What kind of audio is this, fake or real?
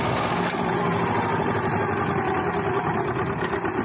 real